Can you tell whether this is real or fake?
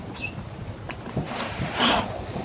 real